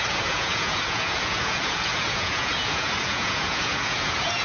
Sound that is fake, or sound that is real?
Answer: fake